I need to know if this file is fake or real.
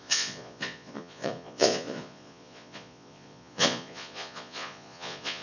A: fake